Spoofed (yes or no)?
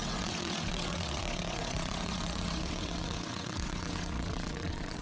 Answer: yes